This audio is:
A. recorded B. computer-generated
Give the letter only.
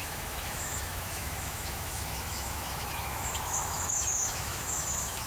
B